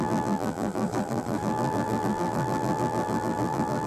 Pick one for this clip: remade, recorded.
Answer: remade